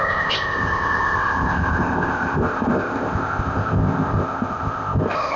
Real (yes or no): no